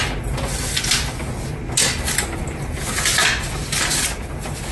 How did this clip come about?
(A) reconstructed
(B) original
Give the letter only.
B